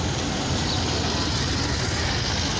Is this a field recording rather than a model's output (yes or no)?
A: yes